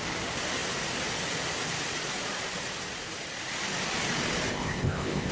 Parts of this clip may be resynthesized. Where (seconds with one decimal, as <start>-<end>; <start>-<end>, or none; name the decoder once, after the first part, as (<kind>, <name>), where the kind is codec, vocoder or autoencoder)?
4.5-5.3 (codec, ZipCodec)

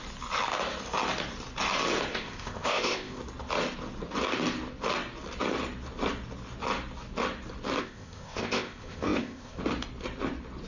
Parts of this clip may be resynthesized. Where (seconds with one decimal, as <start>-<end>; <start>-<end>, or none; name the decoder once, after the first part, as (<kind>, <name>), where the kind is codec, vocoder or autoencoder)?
2.1-3.2 (codec, ZipCodec); 7.8-9.6